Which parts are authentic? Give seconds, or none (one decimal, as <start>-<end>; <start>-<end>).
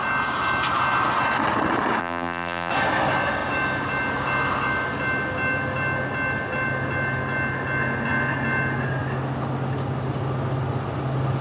0.0-2.0; 2.7-11.4